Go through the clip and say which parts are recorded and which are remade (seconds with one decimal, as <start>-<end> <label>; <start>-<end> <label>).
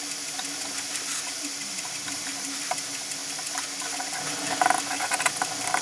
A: 0.0-1.7 recorded; 1.7-2.3 remade; 2.3-5.8 recorded